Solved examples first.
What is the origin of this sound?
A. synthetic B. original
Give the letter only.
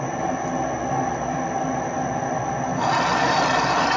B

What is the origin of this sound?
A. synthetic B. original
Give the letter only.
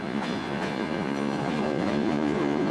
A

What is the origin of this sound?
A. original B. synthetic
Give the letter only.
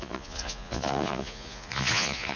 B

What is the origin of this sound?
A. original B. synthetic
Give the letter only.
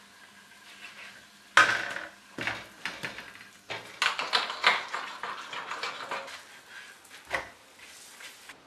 A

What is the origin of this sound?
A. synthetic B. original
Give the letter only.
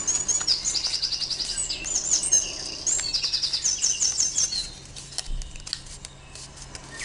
B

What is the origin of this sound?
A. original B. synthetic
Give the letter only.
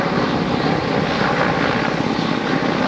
A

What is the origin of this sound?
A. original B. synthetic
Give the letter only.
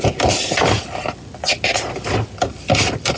A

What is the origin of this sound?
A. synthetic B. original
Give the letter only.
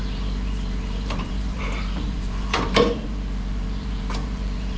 A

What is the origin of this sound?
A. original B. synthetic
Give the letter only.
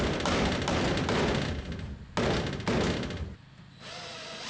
A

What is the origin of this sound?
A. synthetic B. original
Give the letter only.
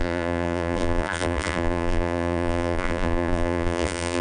A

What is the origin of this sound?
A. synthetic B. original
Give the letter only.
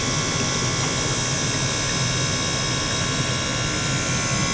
B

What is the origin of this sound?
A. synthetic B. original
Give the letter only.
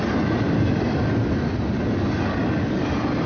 B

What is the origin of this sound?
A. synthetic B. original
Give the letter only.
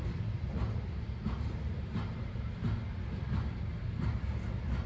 B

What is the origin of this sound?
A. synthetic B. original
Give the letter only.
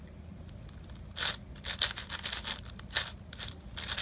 B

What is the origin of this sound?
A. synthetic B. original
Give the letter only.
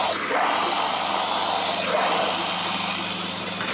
B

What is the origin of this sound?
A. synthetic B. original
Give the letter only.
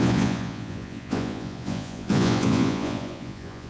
A